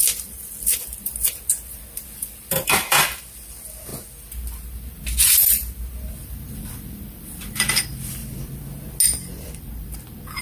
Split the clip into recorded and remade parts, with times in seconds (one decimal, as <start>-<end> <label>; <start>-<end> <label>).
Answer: 0.0-3.9 remade; 3.9-6.1 recorded; 6.1-8.2 remade; 8.2-9.6 recorded; 9.6-10.4 remade